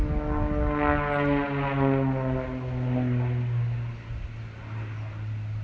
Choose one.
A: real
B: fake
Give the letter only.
A